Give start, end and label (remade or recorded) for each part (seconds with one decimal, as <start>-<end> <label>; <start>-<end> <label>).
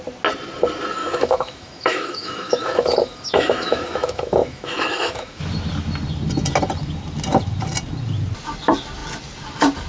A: 0.0-1.0 recorded; 1.0-5.4 remade; 5.4-9.9 recorded